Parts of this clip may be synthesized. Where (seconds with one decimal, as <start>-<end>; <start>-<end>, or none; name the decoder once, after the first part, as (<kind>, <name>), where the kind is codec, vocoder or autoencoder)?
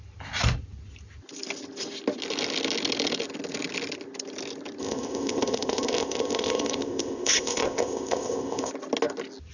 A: 4.8-8.7 (codec, ZipCodec)